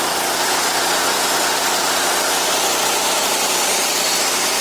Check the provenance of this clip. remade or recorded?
remade